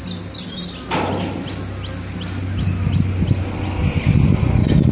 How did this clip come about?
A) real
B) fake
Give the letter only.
B